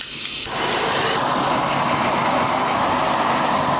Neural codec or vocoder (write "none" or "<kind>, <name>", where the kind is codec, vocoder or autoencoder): none